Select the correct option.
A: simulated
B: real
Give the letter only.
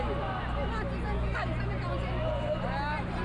B